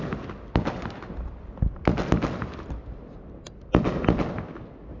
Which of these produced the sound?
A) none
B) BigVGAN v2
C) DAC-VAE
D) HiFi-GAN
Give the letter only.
A